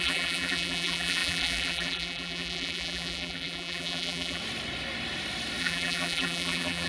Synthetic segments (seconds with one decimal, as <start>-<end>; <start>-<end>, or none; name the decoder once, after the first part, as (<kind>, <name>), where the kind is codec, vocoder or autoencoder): 0.0-4.4 (vocoder, BigVGAN v2); 5.6-6.9